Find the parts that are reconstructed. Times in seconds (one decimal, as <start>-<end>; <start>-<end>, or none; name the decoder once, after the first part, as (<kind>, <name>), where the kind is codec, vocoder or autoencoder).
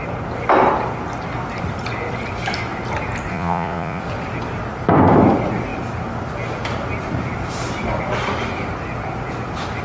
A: 3.3-4.0 (vocoder, Vocos)